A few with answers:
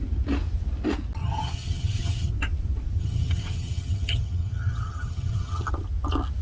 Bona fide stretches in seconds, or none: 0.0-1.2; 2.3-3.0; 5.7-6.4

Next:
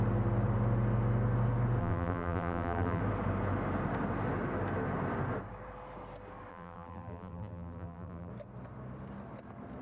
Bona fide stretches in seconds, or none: 0.0-1.8; 3.0-6.5; 8.3-9.8

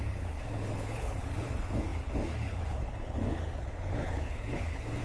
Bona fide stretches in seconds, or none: none

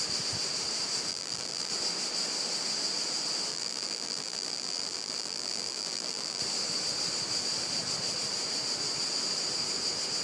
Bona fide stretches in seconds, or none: 0.0-1.1; 1.7-3.5; 6.4-10.2

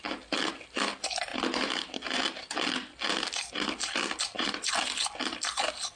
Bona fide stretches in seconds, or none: 0.0-6.0

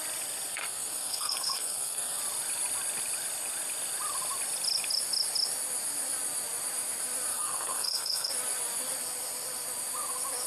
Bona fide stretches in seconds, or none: 0.0-0.5; 2.2-7.3; 8.3-10.5